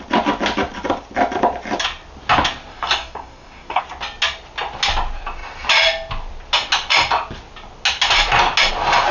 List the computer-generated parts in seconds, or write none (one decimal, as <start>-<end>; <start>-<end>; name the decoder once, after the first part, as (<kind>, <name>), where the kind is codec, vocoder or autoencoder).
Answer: 2.7-3.8 (codec, DAC)